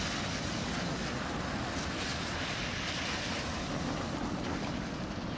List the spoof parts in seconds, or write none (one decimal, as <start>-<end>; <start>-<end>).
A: none

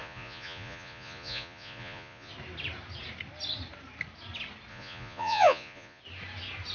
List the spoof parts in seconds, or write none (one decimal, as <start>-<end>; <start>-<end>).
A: 0.0-2.3; 4.7-6.0

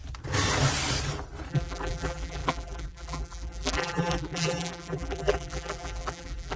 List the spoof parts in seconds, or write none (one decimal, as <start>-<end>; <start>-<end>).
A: 1.5-6.6

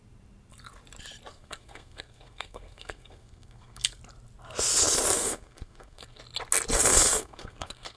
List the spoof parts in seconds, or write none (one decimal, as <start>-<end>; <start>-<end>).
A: 1.3-4.0; 5.2-6.2; 6.9-8.0

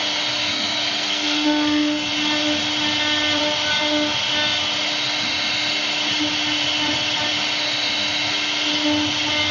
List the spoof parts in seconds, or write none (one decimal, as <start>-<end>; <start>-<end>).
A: 0.4-2.1

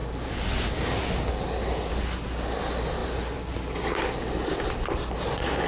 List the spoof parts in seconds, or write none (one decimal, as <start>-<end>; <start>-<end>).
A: none